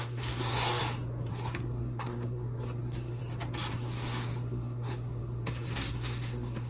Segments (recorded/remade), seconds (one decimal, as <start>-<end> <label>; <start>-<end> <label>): 0.0-0.8 remade; 0.8-1.3 recorded; 1.3-3.2 remade; 3.2-3.7 recorded; 3.7-6.7 remade